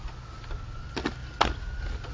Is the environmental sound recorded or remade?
recorded